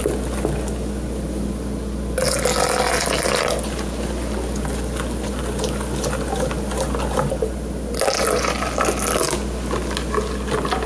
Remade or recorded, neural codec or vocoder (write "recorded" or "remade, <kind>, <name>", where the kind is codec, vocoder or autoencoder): recorded